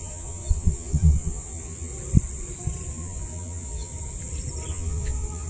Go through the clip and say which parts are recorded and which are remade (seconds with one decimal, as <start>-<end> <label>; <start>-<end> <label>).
0.0-1.9 remade; 1.9-2.9 recorded; 2.9-3.9 remade; 3.9-4.7 recorded; 4.7-5.5 remade